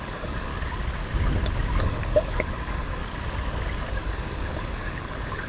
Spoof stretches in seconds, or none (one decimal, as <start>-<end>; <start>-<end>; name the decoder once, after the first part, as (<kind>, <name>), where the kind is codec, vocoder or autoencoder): 0.0-0.5 (codec, DAC); 1.8-3.0; 3.9-5.5

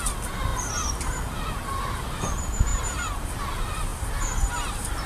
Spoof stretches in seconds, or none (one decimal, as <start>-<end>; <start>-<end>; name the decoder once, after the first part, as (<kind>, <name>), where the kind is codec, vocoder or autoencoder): 0.5-1.2 (vocoder, BigVGAN v2); 2.7-3.3; 3.9-5.1

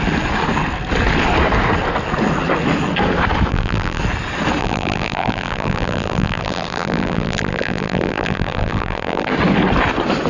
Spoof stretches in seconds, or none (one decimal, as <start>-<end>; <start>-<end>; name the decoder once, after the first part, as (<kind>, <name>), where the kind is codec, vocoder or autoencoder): 3.5-4.0 (vocoder, BigVGAN v2); 4.6-9.3

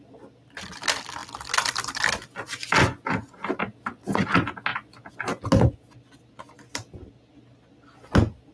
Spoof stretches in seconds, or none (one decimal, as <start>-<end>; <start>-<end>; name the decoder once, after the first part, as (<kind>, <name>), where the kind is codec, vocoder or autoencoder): none